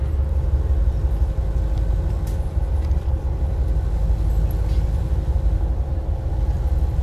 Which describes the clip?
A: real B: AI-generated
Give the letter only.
A